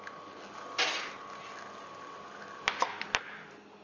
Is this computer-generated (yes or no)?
no